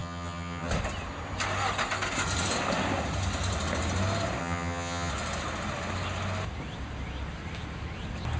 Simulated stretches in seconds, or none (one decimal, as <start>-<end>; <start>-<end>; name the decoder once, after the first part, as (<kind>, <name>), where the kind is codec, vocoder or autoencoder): 0.0-0.7 (vocoder, HiFi-GAN); 4.4-5.1